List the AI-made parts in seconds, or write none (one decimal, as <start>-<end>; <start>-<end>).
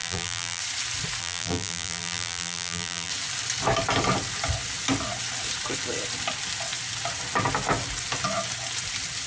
0.0-0.6; 1.2-3.1